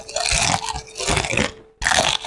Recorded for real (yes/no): yes